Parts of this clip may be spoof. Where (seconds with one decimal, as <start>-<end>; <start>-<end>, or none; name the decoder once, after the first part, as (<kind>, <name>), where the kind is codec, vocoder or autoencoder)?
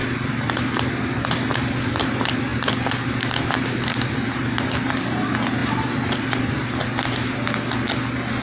none